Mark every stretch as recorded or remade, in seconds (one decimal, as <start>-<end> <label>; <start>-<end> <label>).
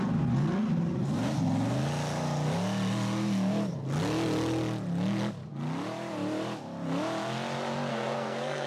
0.0-7.9 recorded; 7.9-8.7 remade